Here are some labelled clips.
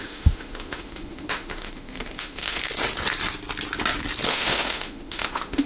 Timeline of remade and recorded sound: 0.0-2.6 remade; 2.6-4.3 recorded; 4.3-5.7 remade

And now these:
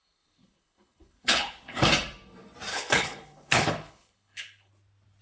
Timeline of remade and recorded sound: 0.0-1.9 remade; 1.9-2.7 recorded; 2.7-4.7 remade; 4.7-5.2 recorded

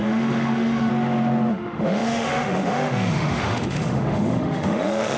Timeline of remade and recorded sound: 0.0-0.9 remade; 0.9-1.5 recorded; 1.5-5.2 remade

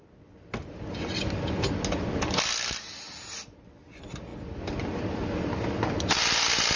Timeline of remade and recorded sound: 0.0-6.8 recorded